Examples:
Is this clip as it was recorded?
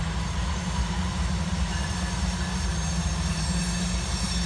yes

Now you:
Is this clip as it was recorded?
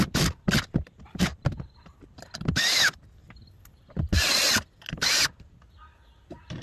yes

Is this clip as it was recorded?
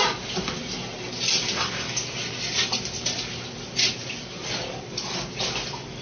yes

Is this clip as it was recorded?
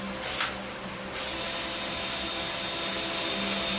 yes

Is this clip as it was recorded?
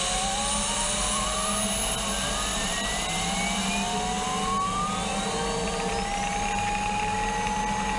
yes